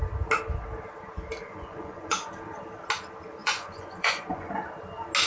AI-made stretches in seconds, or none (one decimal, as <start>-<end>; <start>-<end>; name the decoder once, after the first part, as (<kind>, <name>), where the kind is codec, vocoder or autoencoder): 1.4-2.3 (vocoder, Vocos); 3.4-4.5